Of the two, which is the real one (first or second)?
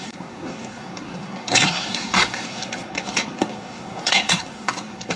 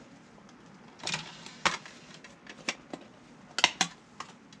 second